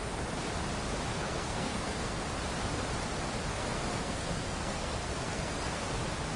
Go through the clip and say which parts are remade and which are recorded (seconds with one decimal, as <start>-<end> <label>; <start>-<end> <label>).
0.0-1.1 recorded; 1.1-2.2 remade; 2.2-3.5 recorded; 3.5-5.8 remade; 5.8-6.4 recorded